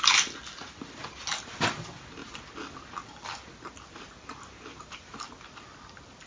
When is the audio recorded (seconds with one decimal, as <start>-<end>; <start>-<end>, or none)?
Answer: 0.0-4.7; 5.2-6.3